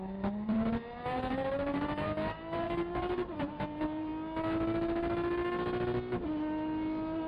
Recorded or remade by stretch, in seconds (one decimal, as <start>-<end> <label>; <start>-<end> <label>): 0.0-4.1 remade; 4.1-7.3 recorded